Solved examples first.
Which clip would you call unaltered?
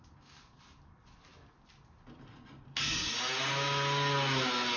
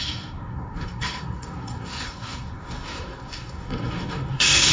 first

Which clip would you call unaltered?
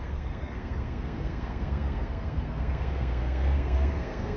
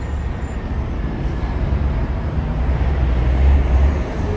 second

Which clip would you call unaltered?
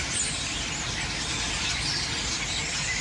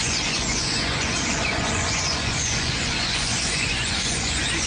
first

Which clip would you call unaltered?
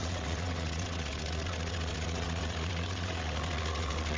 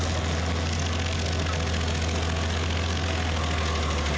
second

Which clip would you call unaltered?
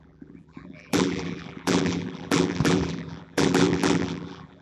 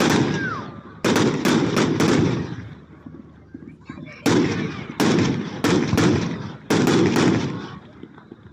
second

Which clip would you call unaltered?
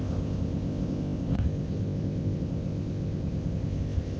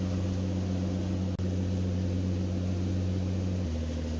second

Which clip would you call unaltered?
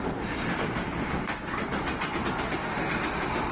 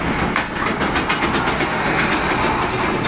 second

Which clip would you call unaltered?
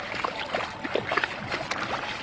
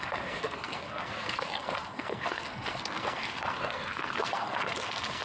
first